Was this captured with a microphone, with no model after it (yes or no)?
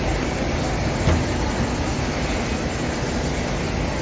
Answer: yes